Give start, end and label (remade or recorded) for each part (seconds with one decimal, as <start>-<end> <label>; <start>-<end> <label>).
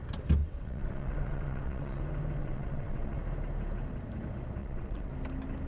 0.0-0.4 recorded; 0.4-2.0 remade; 2.0-2.4 recorded; 2.4-3.2 remade; 3.2-4.6 recorded; 4.6-5.1 remade; 5.1-5.7 recorded